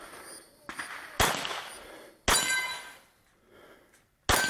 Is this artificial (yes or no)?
no